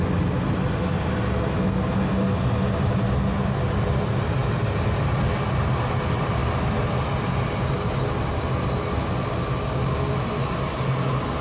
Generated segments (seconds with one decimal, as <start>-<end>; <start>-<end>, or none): none